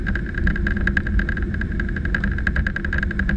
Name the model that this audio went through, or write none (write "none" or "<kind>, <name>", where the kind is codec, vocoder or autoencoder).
none